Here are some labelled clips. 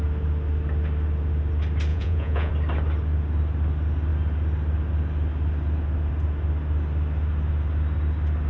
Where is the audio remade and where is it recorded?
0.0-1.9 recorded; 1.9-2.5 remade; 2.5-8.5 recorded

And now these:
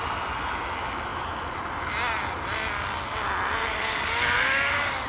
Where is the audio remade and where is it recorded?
0.0-3.7 recorded; 3.7-5.1 remade

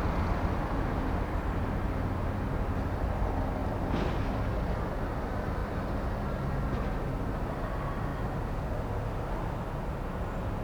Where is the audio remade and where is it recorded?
0.0-10.6 recorded

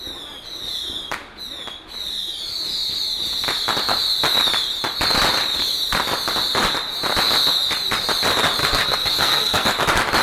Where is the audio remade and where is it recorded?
0.0-8.6 recorded; 8.6-9.7 remade; 9.7-10.2 recorded

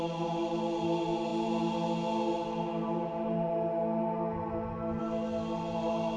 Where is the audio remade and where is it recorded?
0.0-6.2 recorded

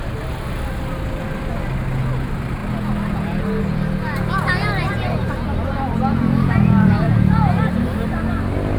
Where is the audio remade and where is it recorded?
0.0-6.1 recorded; 6.1-7.5 remade; 7.5-8.8 recorded

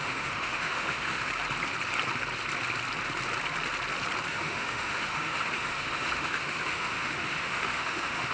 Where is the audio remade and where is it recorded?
0.0-1.3 remade; 1.3-4.3 recorded; 4.3-8.3 remade